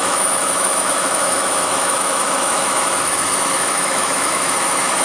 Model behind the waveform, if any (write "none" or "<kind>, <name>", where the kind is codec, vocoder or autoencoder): autoencoder, DAC-VAE